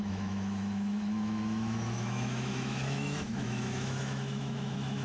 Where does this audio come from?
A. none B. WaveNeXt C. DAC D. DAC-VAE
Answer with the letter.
D